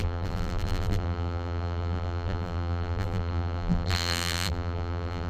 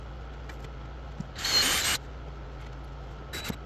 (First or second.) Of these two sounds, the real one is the second